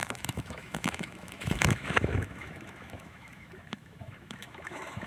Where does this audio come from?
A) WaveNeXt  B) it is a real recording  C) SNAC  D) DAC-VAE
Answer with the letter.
D